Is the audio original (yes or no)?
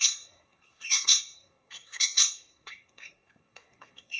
no